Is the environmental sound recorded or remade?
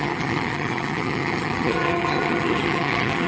remade